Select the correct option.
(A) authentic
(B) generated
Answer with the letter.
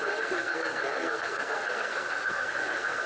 B